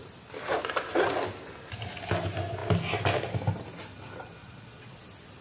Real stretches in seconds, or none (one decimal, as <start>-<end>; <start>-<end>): 0.0-4.4; 5.0-5.4